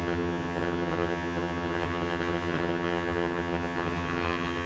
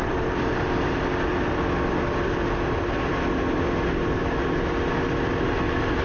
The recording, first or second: second